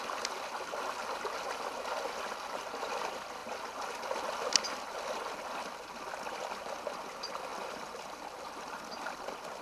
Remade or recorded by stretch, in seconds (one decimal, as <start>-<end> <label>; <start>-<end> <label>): 0.0-7.5 recorded; 7.5-8.2 remade; 8.2-9.6 recorded